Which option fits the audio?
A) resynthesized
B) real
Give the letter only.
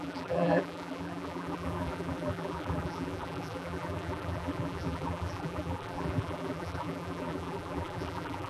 A